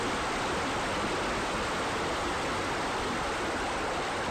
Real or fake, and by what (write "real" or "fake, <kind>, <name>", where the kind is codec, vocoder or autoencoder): real